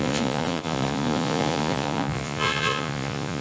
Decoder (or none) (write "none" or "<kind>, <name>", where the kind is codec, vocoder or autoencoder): vocoder, Vocos